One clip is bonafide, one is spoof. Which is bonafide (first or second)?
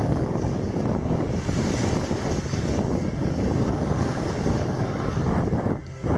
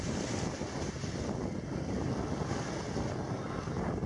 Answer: second